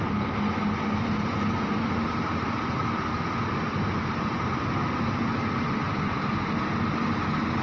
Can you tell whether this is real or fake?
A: real